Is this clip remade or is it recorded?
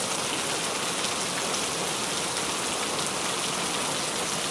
recorded